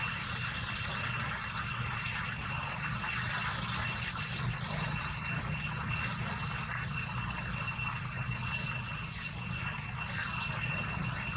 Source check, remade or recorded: recorded